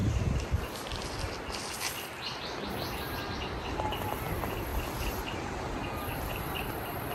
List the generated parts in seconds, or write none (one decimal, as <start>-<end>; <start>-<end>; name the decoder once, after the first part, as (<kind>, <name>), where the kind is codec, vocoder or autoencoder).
0.0-4.7 (vocoder, BigVGAN v2); 6.1-7.1